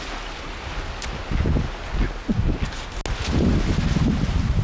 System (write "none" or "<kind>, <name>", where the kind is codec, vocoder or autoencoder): none